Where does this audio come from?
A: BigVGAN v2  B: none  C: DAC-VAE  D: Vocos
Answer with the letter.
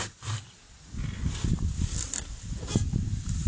B